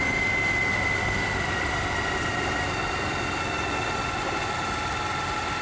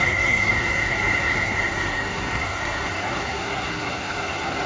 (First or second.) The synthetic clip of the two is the second